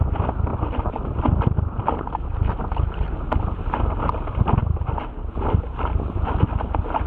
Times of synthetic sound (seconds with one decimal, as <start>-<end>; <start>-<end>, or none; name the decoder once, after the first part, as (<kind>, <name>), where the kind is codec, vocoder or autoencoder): none

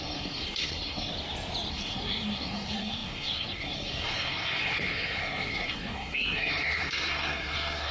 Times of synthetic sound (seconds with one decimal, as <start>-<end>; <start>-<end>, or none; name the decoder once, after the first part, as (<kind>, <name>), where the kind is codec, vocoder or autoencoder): 0.0-1.1 (codec, SNAC); 1.7-7.9